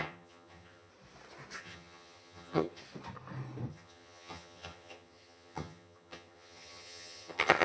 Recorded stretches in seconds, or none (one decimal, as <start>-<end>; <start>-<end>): 0.9-1.6; 2.8-3.7